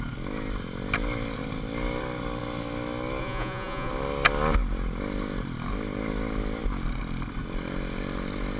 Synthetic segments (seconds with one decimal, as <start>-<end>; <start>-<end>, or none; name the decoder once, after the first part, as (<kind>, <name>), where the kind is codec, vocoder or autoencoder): 3.2-3.9 (vocoder, Vocos)